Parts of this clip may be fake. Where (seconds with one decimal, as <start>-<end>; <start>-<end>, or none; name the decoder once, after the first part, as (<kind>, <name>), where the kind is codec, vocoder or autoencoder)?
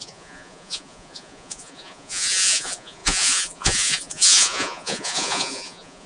0.0-6.1 (vocoder, Vocos)